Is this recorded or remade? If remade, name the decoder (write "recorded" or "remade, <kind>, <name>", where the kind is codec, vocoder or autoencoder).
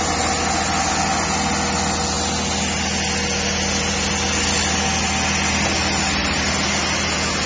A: recorded